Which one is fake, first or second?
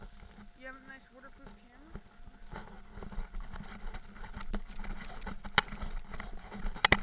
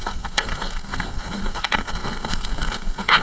second